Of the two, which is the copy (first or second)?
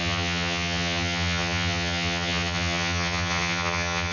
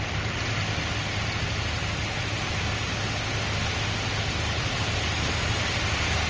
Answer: first